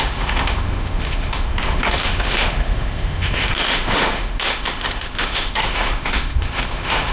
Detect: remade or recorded remade